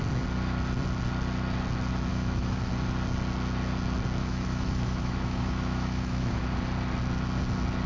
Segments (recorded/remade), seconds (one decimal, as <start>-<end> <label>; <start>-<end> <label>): 0.0-2.1 recorded; 2.1-2.7 remade; 2.7-4.2 recorded; 4.2-6.4 remade; 6.4-7.9 recorded